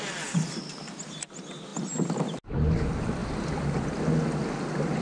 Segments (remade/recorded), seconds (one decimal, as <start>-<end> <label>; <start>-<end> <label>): 0.0-5.0 recorded